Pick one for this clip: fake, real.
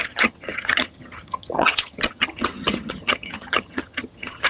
fake